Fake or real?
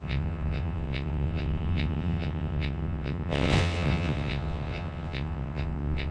fake